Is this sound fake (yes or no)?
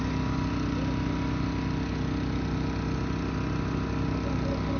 no